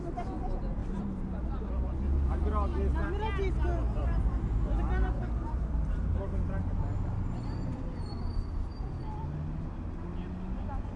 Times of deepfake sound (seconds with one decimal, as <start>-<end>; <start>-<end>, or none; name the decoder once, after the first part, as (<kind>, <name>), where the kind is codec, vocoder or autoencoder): 0.8-2.3 (vocoder, BigVGAN v2); 4.0-8.0